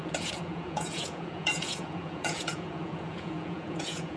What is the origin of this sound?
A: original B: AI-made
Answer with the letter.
B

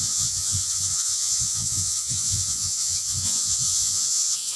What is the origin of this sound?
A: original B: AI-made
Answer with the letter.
B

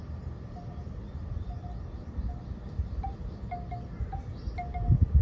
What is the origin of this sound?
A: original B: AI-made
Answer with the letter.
A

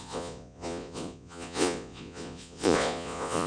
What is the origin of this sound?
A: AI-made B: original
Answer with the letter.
A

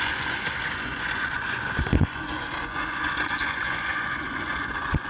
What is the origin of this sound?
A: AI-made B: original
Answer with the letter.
A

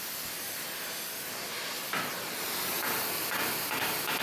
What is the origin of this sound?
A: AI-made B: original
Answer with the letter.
B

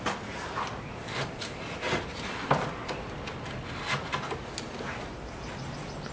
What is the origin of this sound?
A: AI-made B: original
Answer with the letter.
B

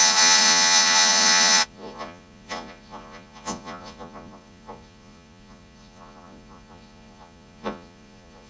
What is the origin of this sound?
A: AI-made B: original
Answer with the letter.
A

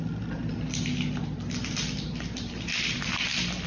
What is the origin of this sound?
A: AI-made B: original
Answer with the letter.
B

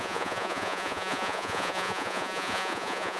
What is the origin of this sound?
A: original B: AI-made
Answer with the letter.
B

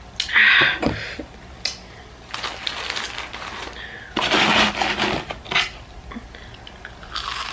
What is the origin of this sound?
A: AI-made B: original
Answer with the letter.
B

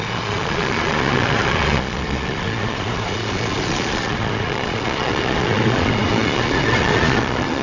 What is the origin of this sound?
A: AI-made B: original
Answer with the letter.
A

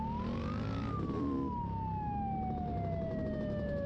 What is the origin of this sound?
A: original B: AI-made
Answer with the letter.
A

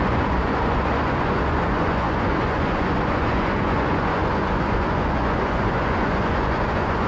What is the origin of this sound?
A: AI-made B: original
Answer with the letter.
A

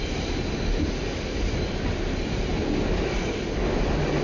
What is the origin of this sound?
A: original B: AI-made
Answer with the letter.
A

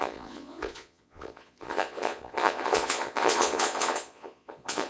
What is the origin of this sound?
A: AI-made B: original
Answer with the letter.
A